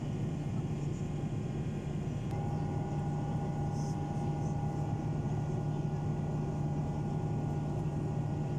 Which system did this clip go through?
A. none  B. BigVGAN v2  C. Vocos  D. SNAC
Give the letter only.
A